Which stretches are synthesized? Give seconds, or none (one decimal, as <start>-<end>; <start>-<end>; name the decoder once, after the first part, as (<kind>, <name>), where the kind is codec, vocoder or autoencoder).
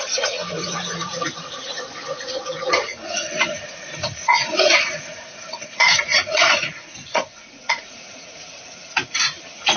0.0-9.8 (vocoder, Vocos)